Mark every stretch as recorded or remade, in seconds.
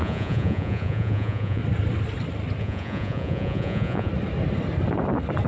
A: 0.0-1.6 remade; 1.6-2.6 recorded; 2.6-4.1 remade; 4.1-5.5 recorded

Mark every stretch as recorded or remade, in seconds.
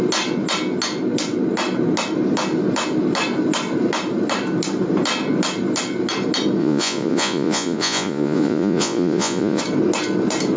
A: 0.0-6.6 recorded; 6.6-9.6 remade; 9.6-10.6 recorded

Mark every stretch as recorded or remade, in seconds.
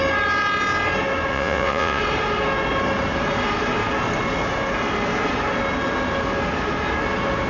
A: 0.0-1.3 recorded; 1.3-2.0 remade; 2.0-7.5 recorded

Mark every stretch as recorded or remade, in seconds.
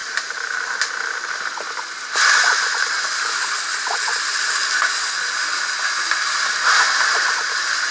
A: 0.0-7.9 recorded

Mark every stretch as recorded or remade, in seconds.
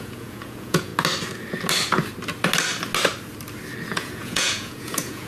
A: 0.0-0.9 remade; 0.9-3.9 recorded; 3.9-5.3 remade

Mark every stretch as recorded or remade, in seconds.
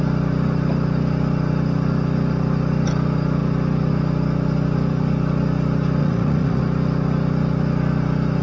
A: 0.0-6.0 recorded; 6.0-6.6 remade; 6.6-8.4 recorded